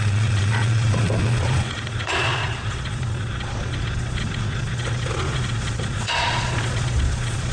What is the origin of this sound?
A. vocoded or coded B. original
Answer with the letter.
A